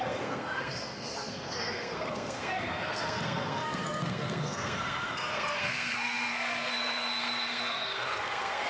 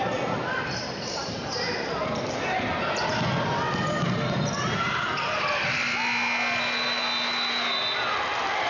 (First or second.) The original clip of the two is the second